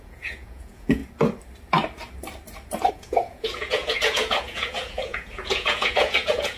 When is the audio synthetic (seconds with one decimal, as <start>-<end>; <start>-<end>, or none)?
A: 0.0-1.0; 2.9-6.6